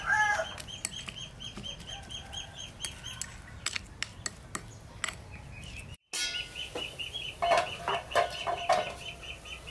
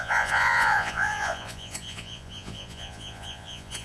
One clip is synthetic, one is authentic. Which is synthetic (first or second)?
second